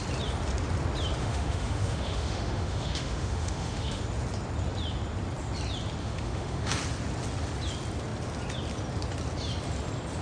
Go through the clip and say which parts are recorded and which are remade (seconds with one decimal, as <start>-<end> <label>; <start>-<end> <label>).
0.0-1.2 recorded; 1.2-4.0 remade; 4.0-6.0 recorded; 6.0-6.7 remade; 6.7-10.2 recorded